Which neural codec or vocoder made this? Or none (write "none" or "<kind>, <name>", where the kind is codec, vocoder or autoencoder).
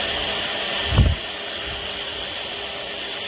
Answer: none